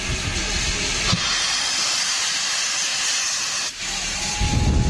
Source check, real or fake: real